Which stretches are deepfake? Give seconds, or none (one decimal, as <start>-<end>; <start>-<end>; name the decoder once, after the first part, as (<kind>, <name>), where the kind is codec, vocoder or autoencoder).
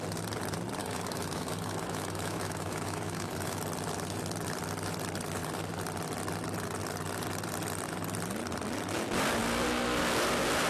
0.8-3.6 (autoencoder, DAC-VAE)